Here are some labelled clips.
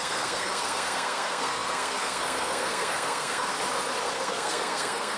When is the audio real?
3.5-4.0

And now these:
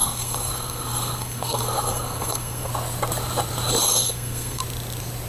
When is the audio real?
2.7-3.8; 4.6-5.3

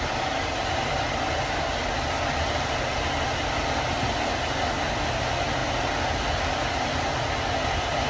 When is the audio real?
0.0-8.1

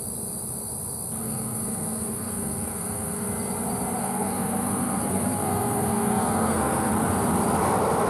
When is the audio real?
0.0-1.2; 3.3-4.0; 6.9-8.1

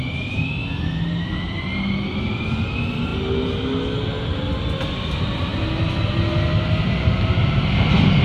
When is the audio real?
0.0-8.2

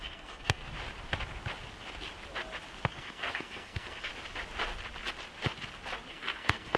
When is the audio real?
0.6-2.9; 4.1-6.1

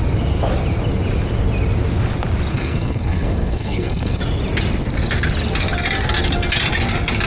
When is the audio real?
0.0-2.5; 4.2-7.3

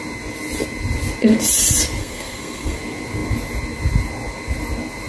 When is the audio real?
0.0-2.0; 2.8-5.1